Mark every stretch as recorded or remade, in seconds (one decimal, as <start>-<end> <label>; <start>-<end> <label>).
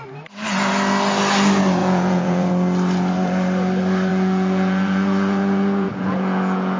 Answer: 0.0-1.8 recorded; 1.8-2.5 remade; 2.5-4.1 recorded; 4.1-6.8 remade